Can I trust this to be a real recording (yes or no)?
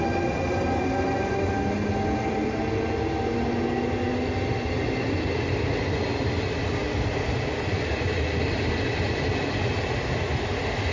yes